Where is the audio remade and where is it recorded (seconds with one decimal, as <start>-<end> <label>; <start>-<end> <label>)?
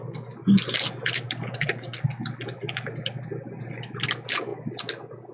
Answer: 0.0-5.3 recorded